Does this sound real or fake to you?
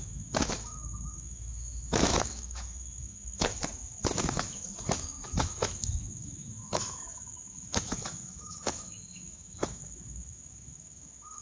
fake